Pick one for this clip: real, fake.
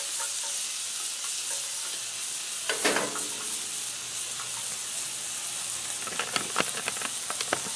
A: real